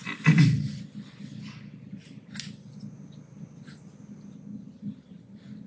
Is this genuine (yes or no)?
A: yes